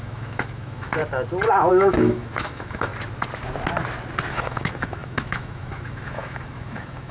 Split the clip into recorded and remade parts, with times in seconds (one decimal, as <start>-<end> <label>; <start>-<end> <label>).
0.0-1.0 remade; 1.0-1.7 recorded; 1.7-2.9 remade; 2.9-4.3 recorded; 4.3-7.1 remade